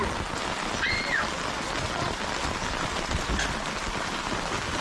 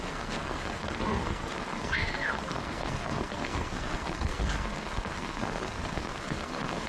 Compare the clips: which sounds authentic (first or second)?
first